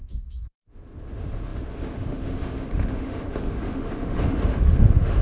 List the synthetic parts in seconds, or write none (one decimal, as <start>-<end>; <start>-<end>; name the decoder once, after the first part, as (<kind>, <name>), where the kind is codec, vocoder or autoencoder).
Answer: 0.0-5.2 (autoencoder, DAC-VAE)